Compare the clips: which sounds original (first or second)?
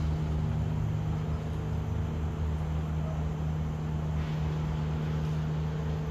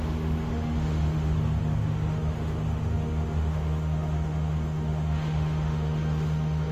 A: first